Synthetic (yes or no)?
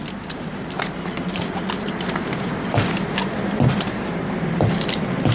yes